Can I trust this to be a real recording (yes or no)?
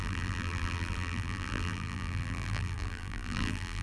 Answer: no